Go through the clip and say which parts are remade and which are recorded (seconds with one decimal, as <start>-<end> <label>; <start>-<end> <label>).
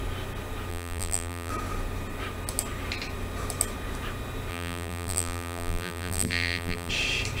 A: 0.0-0.7 recorded; 0.7-1.5 remade; 1.5-4.5 recorded; 4.5-6.9 remade; 6.9-7.4 recorded